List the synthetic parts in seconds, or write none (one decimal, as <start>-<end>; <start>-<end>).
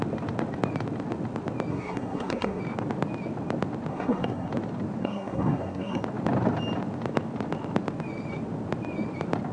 1.7-2.6; 3.9-4.5; 5.0-6.0